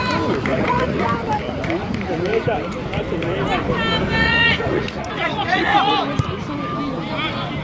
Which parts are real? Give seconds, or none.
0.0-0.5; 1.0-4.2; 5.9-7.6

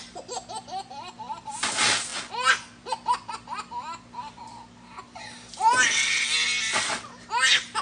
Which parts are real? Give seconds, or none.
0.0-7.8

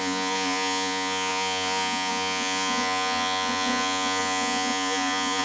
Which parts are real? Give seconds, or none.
none

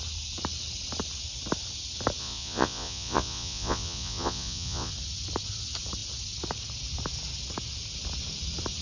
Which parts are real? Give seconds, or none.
0.0-2.2; 4.9-8.8

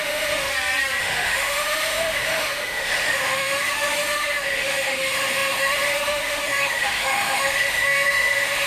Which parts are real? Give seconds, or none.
0.5-1.0

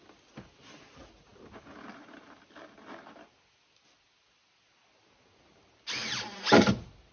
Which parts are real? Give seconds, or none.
0.0-7.1

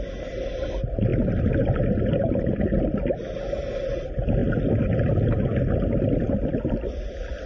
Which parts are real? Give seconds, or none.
0.0-7.5